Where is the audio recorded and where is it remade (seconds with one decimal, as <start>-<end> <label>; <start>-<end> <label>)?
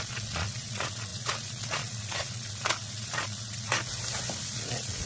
0.0-3.7 remade; 3.7-4.4 recorded; 4.4-5.1 remade